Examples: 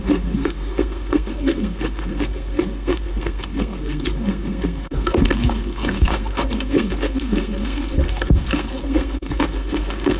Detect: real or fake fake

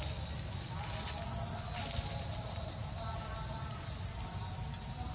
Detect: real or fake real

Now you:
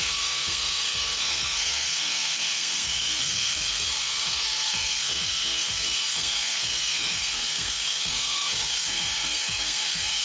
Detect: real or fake fake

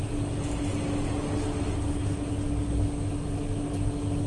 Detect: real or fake real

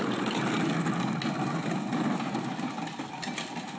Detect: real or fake real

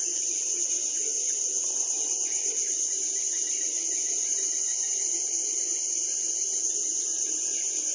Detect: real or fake real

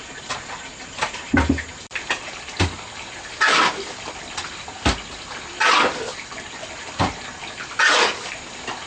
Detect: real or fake real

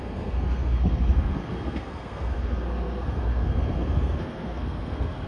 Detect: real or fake fake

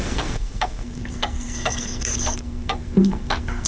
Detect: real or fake fake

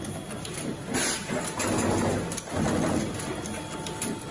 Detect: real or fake real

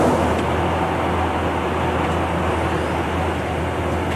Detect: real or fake real